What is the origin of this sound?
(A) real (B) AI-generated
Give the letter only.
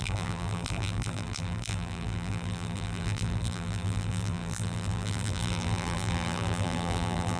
B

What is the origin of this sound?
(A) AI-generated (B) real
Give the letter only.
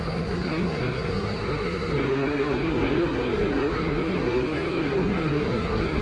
A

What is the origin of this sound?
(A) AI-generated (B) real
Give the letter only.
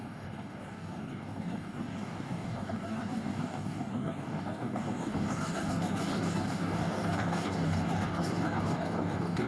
A